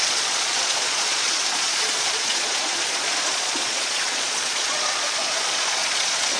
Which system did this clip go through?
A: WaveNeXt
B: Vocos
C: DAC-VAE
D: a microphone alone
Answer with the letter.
B